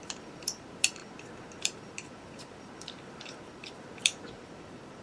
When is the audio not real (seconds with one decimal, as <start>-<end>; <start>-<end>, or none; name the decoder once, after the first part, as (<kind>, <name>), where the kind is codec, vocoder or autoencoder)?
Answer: 0.0-5.0 (vocoder, BigVGAN v2)